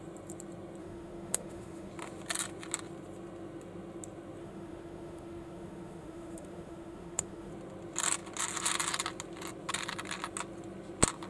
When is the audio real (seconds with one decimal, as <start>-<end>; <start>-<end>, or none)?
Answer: 0.0-0.8; 1.9-4.4; 7.5-11.3